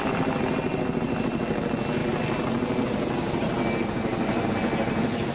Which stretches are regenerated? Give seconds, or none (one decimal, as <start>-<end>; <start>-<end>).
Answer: none